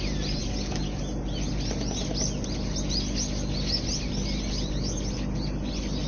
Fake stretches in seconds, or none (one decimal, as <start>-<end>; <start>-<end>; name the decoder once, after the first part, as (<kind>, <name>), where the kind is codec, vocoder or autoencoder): none